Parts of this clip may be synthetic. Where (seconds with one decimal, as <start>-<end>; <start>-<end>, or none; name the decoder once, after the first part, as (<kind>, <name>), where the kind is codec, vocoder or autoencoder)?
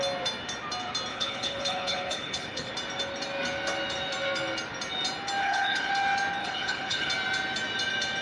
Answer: 1.1-2.7 (codec, HILCodec); 5.4-5.9; 6.4-7.1